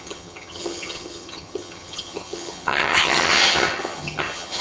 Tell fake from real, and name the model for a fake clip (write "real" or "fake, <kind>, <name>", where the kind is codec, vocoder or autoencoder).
fake, vocoder, HiFi-GAN